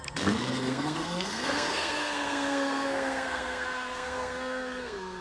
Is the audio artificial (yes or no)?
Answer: yes